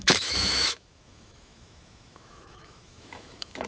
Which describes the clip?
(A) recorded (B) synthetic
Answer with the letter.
B